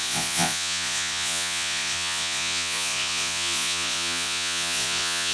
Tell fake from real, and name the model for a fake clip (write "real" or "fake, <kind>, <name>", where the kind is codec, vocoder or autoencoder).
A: fake, vocoder, Vocos